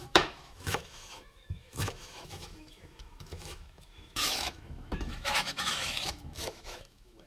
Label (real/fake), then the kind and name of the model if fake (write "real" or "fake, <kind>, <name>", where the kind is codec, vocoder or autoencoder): fake, autoencoder, DAC-VAE